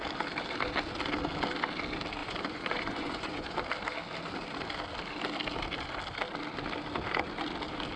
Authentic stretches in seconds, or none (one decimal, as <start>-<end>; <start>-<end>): 0.0-2.2; 3.5-8.0

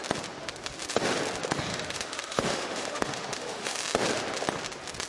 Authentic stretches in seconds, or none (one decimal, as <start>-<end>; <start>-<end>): 0.0-1.7; 3.8-5.1